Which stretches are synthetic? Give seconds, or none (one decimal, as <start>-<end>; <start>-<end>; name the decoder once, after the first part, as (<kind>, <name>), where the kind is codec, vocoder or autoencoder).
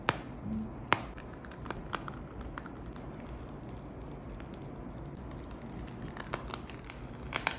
none